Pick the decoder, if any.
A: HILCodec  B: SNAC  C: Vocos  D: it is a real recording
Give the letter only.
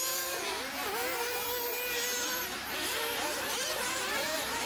D